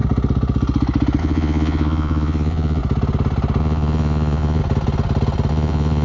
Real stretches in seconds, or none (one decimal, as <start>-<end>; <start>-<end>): 0.0-1.2; 2.8-3.6; 4.6-5.5